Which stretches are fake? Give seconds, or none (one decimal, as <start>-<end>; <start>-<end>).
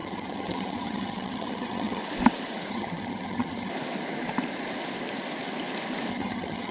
0.0-2.0; 2.7-3.7; 6.1-6.7